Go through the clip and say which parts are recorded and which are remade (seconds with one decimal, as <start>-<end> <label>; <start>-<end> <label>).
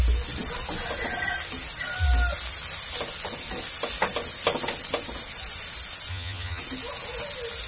0.0-6.1 recorded; 6.1-6.6 remade; 6.6-7.7 recorded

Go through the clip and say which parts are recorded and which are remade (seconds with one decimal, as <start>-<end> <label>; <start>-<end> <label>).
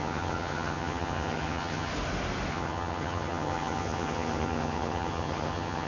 0.0-1.9 remade; 1.9-2.5 recorded; 2.5-5.9 remade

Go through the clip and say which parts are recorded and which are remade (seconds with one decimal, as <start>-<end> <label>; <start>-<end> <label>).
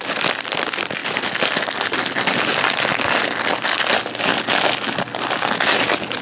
0.0-6.2 recorded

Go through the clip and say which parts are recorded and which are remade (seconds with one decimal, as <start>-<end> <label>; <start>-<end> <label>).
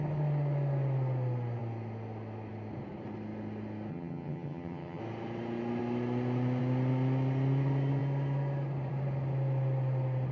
0.0-3.9 recorded; 3.9-5.0 remade; 5.0-10.3 recorded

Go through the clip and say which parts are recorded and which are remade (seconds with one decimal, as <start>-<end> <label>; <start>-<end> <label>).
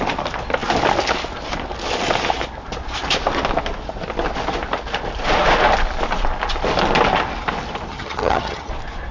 0.0-7.9 recorded; 7.9-8.7 remade; 8.7-9.1 recorded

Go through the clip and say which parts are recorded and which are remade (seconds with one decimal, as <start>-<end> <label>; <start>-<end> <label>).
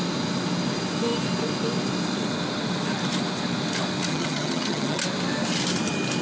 0.0-4.1 recorded; 4.1-5.0 remade; 5.0-6.2 recorded